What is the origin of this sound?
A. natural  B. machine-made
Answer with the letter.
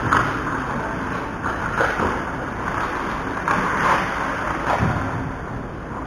A